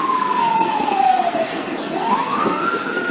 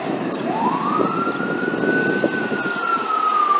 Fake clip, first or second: first